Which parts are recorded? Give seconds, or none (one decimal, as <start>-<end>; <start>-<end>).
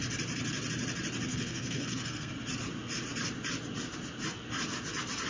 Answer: 0.0-1.3; 2.3-5.3